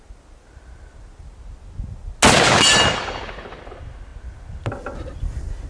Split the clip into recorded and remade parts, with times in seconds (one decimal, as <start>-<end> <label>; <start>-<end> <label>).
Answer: 0.0-5.7 recorded